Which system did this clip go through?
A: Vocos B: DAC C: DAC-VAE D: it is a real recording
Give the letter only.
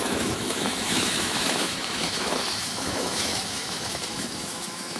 C